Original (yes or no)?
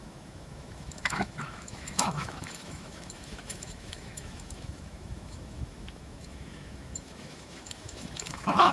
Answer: no